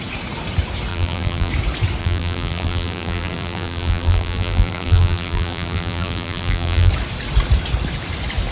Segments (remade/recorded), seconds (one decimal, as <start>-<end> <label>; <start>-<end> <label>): 0.0-0.9 recorded; 0.9-1.5 remade; 1.5-2.0 recorded; 2.0-6.9 remade; 6.9-8.5 recorded

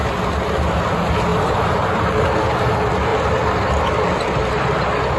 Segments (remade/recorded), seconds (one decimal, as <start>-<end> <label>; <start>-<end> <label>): 0.0-1.3 recorded; 1.3-2.1 remade; 2.1-5.2 recorded

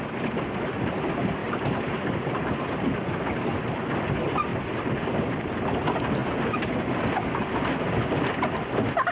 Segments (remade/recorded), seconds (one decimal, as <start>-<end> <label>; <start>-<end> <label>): 0.0-1.4 recorded; 1.4-2.7 remade; 2.7-4.5 recorded; 4.5-5.5 remade; 5.5-9.1 recorded

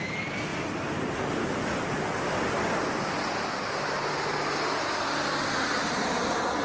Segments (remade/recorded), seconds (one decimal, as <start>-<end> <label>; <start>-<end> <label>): 0.0-0.5 recorded; 0.5-3.6 remade; 3.6-6.6 recorded

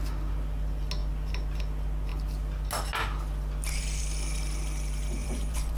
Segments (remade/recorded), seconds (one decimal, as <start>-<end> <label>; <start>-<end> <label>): 0.0-5.2 recorded; 5.2-5.8 remade

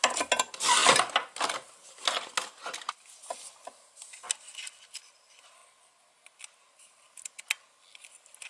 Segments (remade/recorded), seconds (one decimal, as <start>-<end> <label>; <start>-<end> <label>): 0.0-8.5 recorded

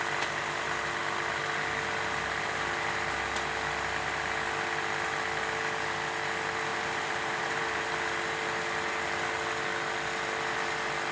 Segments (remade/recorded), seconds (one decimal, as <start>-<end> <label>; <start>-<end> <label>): 0.0-6.7 recorded; 6.7-7.9 remade; 7.9-11.1 recorded

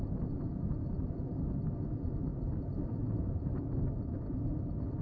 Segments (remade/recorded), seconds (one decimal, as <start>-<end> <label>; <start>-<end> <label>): 0.0-5.0 recorded